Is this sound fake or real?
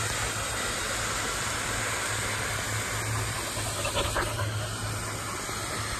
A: real